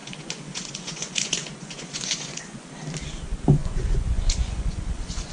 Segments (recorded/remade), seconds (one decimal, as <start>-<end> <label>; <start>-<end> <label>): 0.0-2.7 remade; 2.7-3.6 recorded; 3.6-5.3 remade